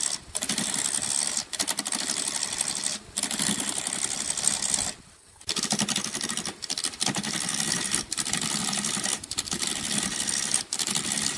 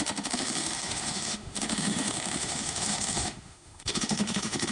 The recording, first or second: first